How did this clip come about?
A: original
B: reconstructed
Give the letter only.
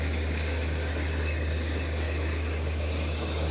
B